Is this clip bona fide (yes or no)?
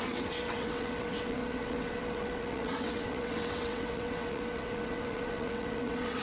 no